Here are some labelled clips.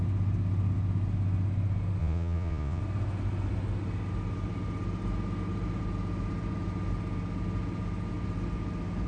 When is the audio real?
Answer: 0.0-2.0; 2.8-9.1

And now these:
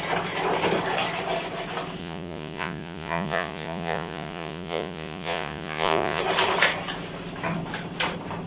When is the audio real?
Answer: 0.0-2.0; 6.2-8.5

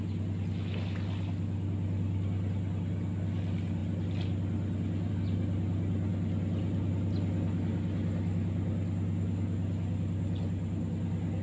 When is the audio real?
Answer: 0.0-11.4

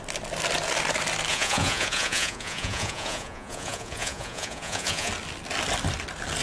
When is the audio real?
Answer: 0.0-1.3; 5.1-6.4

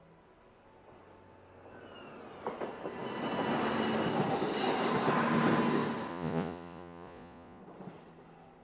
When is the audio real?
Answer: 0.0-6.1; 7.6-8.6

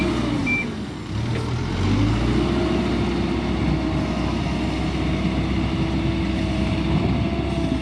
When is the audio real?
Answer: 0.0-7.8